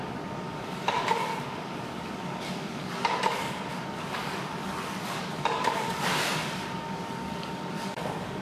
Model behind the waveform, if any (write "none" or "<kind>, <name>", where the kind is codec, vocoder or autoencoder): codec, DAC